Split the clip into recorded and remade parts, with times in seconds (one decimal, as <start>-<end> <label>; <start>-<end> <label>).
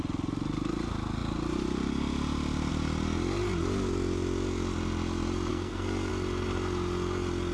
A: 0.0-5.5 recorded; 5.5-6.1 remade; 6.1-7.5 recorded